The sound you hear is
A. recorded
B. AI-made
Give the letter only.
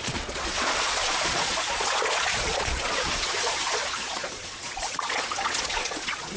B